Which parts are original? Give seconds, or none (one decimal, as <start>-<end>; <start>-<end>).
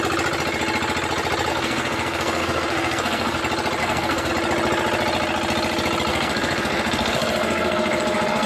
0.0-1.5; 3.4-3.8; 4.3-6.1